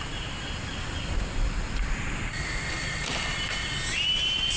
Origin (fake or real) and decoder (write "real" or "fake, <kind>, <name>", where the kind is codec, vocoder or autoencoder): real